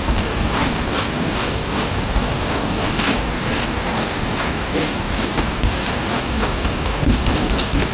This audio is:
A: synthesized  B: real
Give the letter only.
A